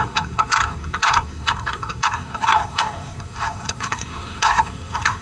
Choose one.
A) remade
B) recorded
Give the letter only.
A